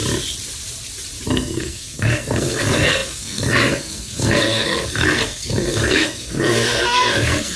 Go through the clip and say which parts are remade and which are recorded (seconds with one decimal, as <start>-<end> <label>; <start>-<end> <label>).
0.0-1.3 recorded; 1.3-7.6 remade